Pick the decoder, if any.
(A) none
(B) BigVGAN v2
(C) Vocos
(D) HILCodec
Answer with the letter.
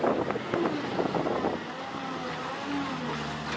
A